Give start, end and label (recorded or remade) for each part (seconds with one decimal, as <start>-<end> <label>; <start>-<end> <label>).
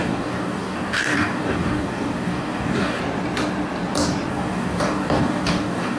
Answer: 0.0-3.0 remade; 3.0-4.3 recorded; 4.3-6.0 remade